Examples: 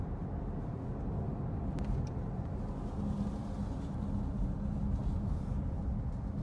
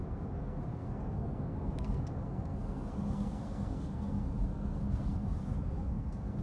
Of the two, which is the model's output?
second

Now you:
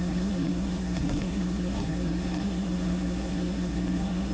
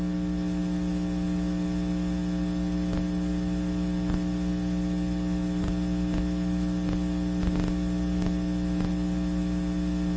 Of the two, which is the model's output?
first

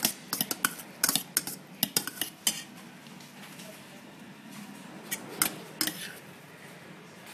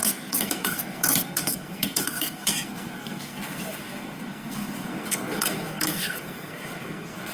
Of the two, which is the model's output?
second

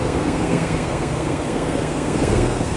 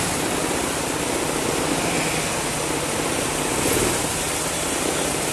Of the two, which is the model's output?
first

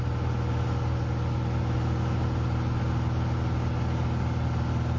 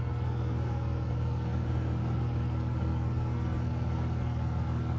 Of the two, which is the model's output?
second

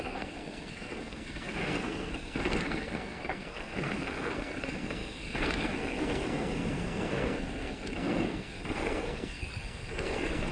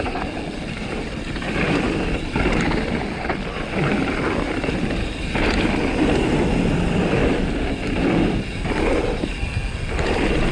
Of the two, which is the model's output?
first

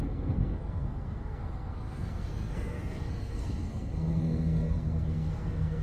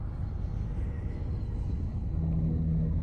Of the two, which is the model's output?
first